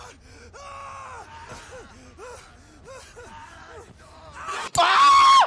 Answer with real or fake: real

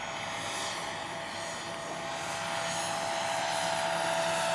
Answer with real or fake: real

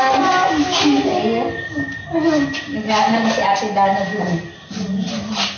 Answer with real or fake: real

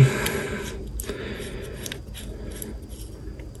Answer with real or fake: real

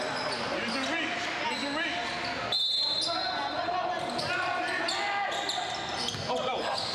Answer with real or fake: real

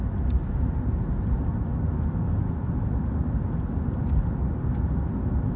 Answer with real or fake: real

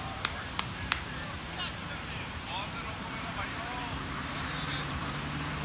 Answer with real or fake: fake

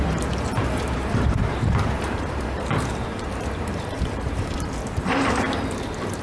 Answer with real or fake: fake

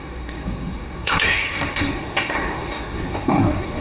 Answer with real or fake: fake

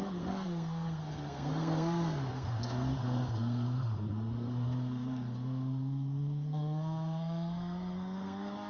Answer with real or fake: fake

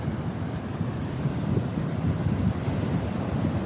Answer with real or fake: real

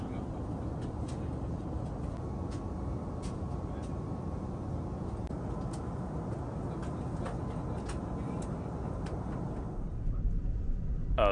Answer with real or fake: real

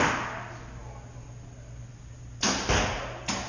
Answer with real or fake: real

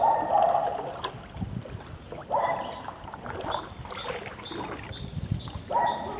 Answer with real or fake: real